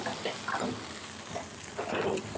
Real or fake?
real